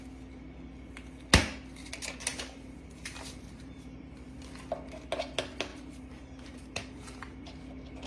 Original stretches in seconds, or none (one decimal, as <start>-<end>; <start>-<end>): 0.0-2.3; 4.4-5.7; 7.6-8.1